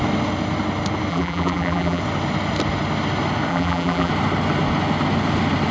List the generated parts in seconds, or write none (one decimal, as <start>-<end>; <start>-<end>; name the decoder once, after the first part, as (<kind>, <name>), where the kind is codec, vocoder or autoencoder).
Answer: 1.1-2.0 (vocoder, BigVGAN v2); 3.5-4.1